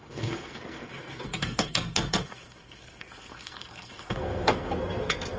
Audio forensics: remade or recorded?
remade